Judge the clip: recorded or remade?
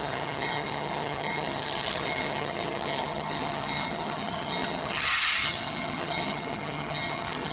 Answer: remade